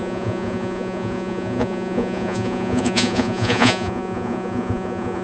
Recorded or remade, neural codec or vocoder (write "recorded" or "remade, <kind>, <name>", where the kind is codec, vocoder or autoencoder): remade, vocoder, Vocos